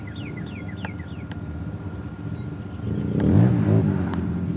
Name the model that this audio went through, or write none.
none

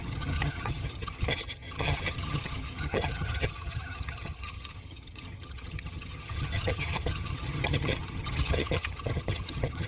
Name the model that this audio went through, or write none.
vocoder, HiFi-GAN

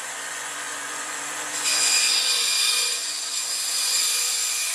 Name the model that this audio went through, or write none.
vocoder, Vocos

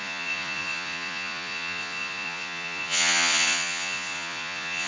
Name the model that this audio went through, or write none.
vocoder, Vocos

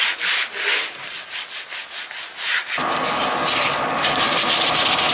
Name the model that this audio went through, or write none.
none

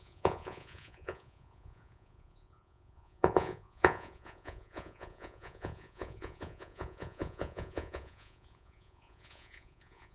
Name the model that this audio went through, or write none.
vocoder, Vocos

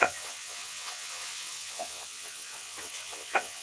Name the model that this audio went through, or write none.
vocoder, WaveNeXt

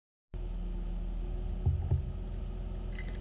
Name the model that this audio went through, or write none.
none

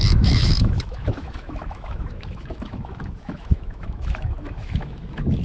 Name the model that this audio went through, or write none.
autoencoder, DAC-VAE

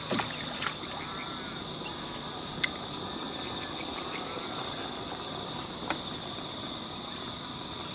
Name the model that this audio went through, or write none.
none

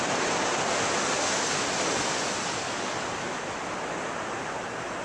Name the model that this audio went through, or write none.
none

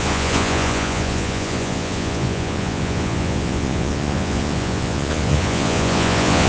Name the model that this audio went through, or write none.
vocoder, Vocos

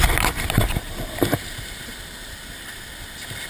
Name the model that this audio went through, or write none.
none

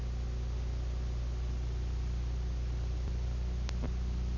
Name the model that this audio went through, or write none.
none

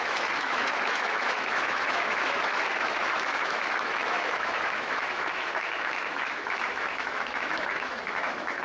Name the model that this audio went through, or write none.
autoencoder, DAC-VAE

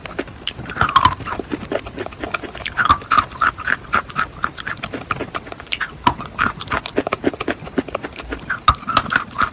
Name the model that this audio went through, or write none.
none